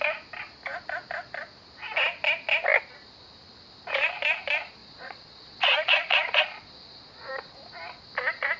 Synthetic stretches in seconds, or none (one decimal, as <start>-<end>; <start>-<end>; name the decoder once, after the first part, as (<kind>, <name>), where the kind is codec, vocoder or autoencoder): 4.8-7.3 (vocoder, Vocos)